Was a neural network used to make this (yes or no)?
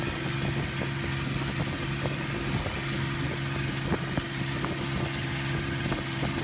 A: no